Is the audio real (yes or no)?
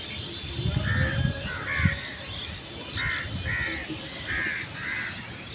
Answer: yes